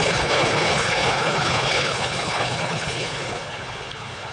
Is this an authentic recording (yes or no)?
no